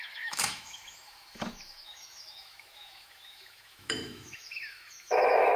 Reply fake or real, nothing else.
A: fake